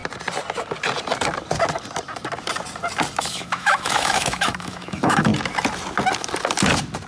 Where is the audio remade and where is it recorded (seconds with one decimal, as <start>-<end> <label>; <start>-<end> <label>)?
0.0-3.2 recorded; 3.2-5.3 remade; 5.3-7.1 recorded